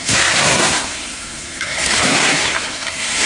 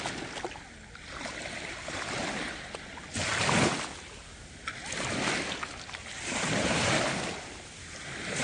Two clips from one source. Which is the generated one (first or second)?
first